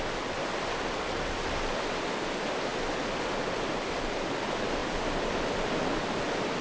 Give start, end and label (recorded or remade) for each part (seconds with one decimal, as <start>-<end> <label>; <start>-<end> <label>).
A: 0.0-2.7 recorded; 2.7-3.7 remade; 3.7-6.6 recorded